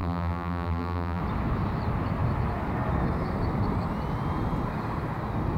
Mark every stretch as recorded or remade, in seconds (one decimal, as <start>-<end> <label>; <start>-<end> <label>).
0.0-1.2 remade; 1.2-5.6 recorded